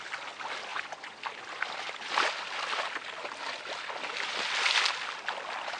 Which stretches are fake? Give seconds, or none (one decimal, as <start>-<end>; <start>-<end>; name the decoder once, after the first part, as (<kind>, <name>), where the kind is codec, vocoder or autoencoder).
0.7-1.2 (vocoder, Vocos)